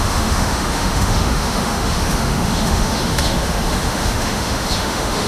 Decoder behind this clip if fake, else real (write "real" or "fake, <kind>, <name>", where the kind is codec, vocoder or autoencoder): fake, autoencoder, DAC-VAE